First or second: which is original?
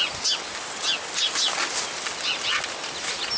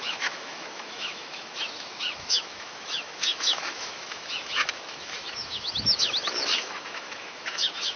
first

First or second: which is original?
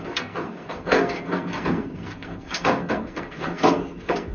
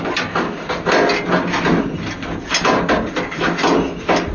second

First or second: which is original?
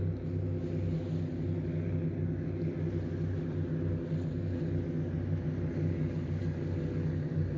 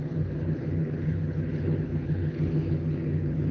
first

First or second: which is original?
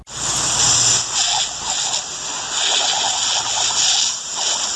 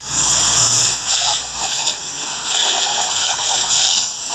first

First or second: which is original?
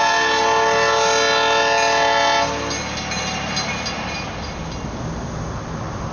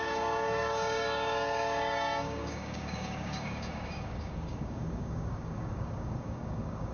first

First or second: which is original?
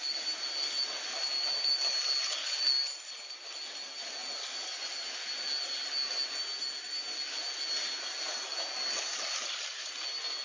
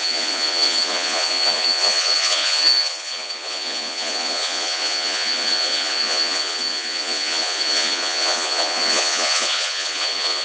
first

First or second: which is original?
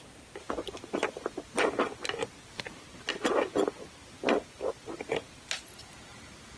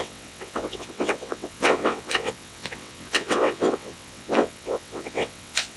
first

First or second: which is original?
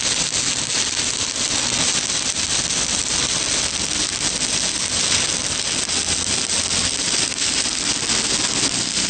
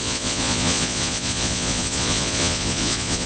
first